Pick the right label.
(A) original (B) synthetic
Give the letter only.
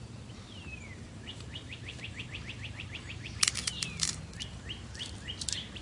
B